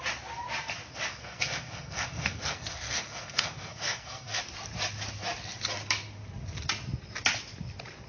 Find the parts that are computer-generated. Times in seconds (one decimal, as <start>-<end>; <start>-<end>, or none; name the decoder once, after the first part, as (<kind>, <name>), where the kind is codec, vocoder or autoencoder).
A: 1.1-4.4 (codec, SNAC)